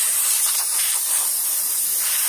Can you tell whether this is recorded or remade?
remade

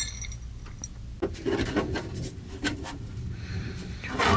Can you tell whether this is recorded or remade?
recorded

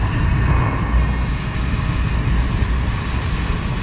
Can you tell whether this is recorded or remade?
recorded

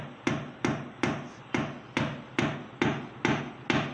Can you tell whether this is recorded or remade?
recorded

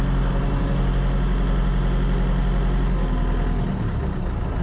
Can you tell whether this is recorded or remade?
recorded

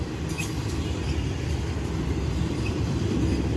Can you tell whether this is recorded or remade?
recorded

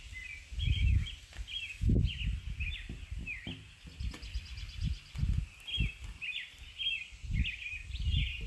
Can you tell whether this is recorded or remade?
recorded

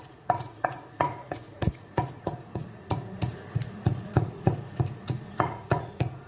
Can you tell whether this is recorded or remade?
remade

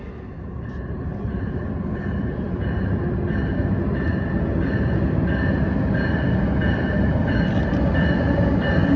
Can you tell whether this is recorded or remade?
recorded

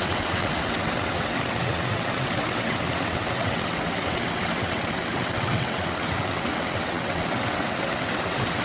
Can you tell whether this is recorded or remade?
remade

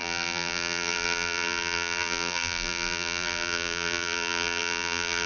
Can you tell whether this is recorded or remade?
remade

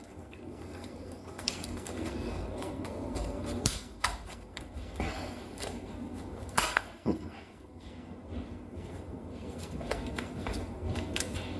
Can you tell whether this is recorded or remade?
remade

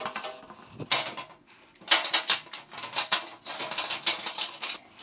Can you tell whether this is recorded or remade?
recorded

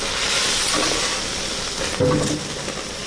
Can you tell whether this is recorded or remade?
recorded